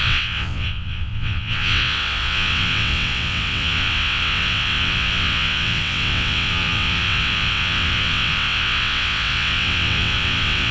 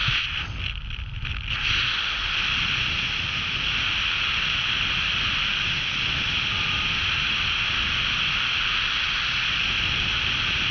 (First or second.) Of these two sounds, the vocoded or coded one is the first